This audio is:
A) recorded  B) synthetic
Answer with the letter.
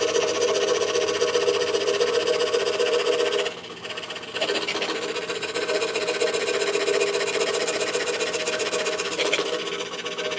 A